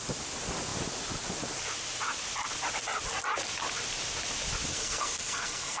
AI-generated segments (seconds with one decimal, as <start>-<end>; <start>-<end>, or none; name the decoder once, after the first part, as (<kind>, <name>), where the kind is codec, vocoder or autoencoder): 4.7-5.8 (codec, SNAC)